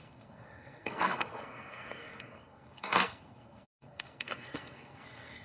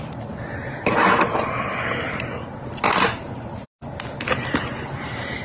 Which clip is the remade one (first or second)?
first